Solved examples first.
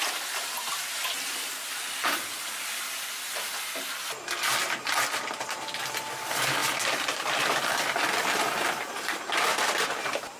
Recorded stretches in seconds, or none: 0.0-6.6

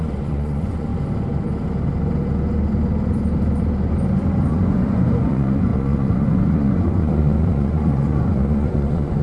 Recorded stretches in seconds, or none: 0.9-4.5

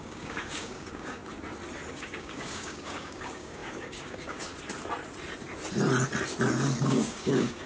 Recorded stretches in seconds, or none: 1.2-1.9; 4.5-6.8

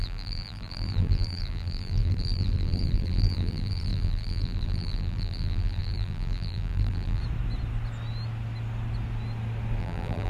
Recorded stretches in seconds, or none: 7.2-9.8

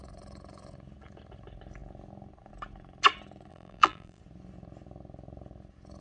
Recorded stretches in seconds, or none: 0.0-3.5; 4.2-6.0

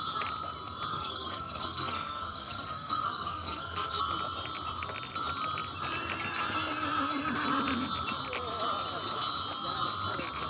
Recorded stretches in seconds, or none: 0.0-0.9; 4.0-10.5

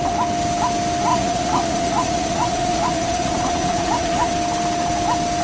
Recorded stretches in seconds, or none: 0.0-1.1; 4.3-5.4

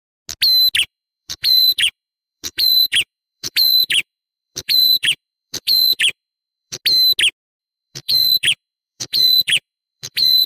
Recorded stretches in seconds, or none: 0.0-0.8; 6.8-7.6